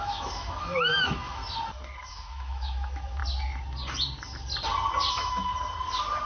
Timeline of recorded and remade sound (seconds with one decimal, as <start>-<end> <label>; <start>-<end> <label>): 0.0-1.4 remade; 1.4-2.1 recorded; 2.1-3.2 remade; 3.2-5.1 recorded; 5.1-5.5 remade; 5.5-6.3 recorded